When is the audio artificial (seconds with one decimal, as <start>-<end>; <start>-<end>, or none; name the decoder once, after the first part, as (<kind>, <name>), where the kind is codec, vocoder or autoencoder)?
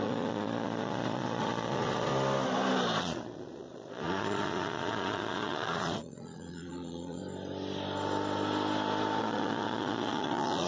0.0-2.1 (vocoder, Vocos); 3.0-7.2; 9.2-10.7